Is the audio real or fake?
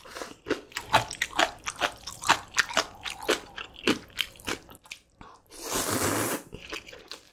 real